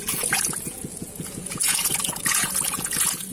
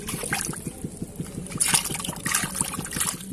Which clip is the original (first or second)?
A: second